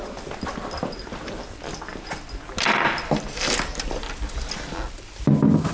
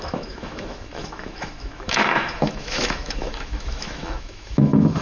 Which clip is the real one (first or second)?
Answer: first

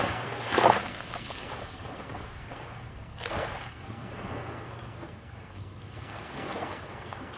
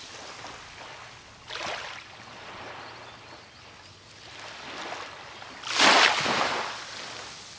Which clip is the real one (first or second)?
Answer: second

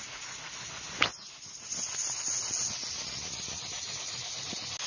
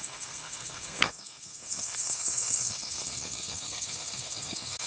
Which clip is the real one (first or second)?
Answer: first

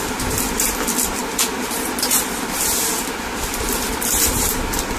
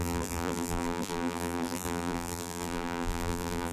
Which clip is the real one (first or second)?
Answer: first